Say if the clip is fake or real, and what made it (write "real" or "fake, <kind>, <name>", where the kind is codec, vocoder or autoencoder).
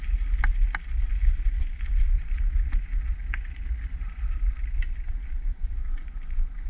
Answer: real